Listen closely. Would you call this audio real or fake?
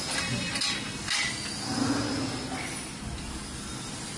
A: real